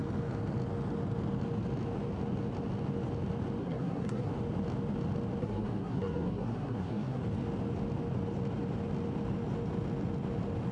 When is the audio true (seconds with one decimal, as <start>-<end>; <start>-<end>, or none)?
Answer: 0.0-3.6; 4.3-5.4; 7.2-10.7